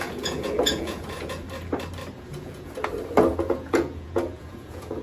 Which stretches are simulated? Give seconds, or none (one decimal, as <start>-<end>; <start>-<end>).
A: 0.0-1.4; 2.2-2.8; 3.3-5.0